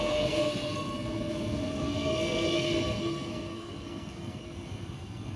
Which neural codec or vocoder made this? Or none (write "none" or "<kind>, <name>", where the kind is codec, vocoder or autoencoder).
codec, SNAC